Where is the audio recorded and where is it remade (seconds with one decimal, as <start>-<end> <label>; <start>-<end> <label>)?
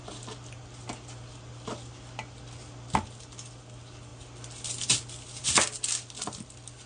0.0-6.9 recorded